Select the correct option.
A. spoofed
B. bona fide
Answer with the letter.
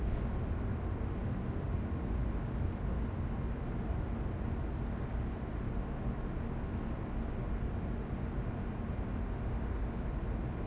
B